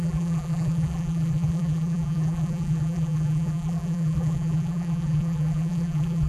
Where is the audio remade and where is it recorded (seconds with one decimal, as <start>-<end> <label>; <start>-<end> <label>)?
0.0-6.3 remade